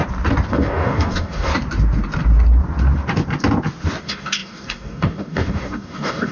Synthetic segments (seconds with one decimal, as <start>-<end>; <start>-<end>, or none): 0.5-1.5; 4.0-6.3